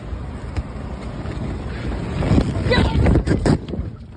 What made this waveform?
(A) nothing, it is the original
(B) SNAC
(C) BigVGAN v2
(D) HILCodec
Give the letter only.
A